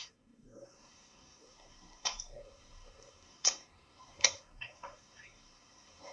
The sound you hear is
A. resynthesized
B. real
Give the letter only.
A